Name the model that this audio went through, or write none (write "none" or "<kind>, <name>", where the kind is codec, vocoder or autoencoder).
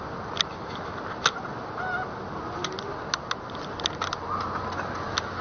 none